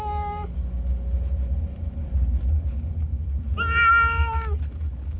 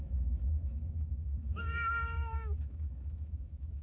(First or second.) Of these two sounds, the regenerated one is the second